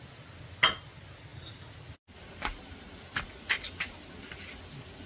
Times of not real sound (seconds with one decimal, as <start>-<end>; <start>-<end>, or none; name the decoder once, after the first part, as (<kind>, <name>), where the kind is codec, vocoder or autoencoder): none